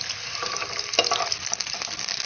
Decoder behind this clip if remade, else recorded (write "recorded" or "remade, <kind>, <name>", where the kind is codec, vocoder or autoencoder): recorded